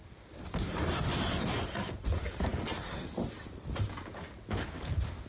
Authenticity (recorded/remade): recorded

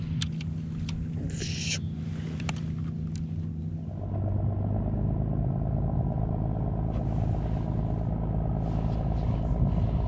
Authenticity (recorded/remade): recorded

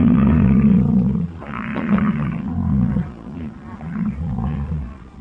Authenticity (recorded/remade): remade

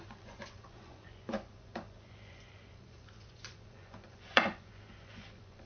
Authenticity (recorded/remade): remade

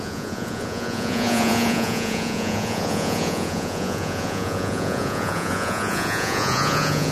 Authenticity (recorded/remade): remade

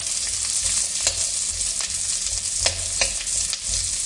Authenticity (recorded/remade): recorded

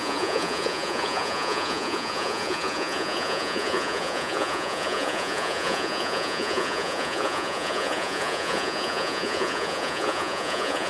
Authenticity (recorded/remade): remade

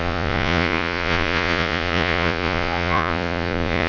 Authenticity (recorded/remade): remade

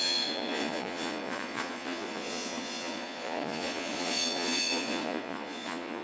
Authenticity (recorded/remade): remade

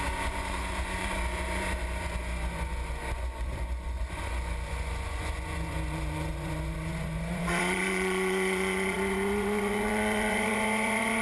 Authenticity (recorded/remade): remade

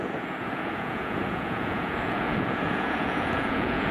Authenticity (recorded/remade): remade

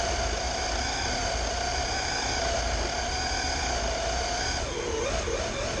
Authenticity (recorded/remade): recorded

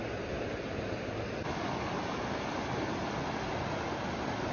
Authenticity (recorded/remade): recorded